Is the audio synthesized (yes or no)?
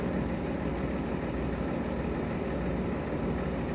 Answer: yes